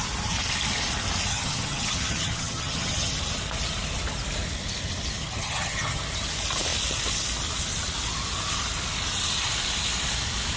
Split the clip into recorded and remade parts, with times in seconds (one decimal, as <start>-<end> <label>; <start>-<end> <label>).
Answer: 0.0-1.3 recorded; 1.3-3.1 remade; 3.1-5.2 recorded; 5.2-6.0 remade; 6.0-10.6 recorded